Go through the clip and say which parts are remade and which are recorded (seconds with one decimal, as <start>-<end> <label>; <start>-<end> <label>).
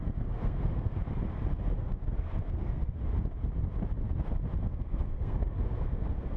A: 0.0-1.0 remade; 1.0-1.7 recorded; 1.7-3.0 remade; 3.0-4.6 recorded; 4.6-6.4 remade